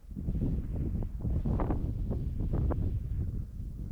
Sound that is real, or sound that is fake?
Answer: real